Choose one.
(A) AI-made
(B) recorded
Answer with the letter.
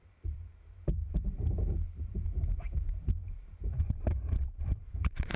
A